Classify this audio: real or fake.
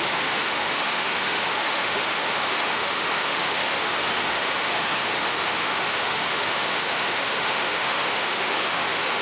fake